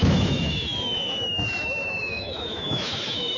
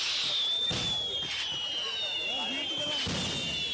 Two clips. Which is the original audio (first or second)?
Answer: second